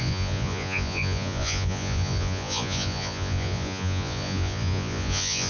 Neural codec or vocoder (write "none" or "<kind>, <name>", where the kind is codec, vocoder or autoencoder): vocoder, Vocos